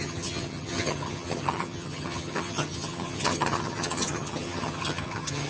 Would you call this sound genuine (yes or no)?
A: no